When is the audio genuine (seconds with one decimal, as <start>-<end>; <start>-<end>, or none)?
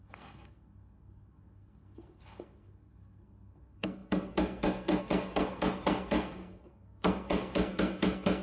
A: none